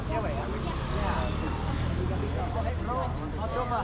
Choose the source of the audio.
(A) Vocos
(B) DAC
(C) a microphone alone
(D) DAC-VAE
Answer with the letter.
C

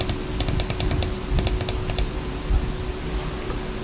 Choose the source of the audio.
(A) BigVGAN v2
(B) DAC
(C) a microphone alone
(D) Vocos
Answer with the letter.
C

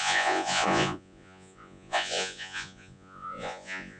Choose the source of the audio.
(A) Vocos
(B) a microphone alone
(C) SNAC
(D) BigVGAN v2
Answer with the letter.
A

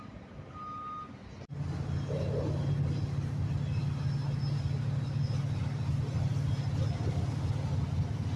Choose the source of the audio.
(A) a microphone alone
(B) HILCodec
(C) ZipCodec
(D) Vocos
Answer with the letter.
A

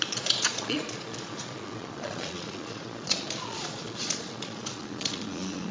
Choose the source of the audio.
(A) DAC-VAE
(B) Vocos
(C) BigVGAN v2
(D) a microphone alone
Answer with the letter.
B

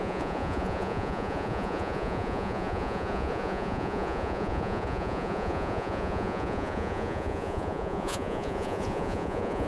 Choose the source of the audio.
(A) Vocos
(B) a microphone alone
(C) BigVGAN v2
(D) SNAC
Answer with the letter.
A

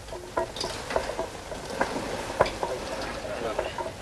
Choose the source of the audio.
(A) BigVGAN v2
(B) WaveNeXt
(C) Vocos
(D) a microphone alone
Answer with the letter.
D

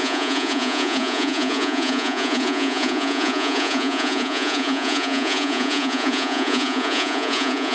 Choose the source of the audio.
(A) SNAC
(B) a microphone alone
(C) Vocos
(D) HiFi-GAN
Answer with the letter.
C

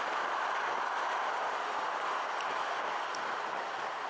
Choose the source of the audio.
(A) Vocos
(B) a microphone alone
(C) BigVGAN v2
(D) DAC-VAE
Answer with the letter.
B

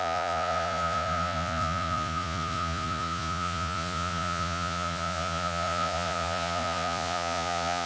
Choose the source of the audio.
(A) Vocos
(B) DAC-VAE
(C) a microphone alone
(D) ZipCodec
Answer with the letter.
A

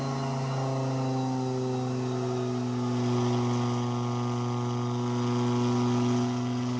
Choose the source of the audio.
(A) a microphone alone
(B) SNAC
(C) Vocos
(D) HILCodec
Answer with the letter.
A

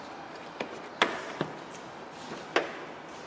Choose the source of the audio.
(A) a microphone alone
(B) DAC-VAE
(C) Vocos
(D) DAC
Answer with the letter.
A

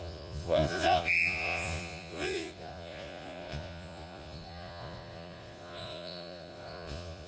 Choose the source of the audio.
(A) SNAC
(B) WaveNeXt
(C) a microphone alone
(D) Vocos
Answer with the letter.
D